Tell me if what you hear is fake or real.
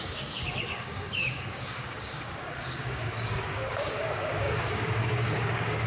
fake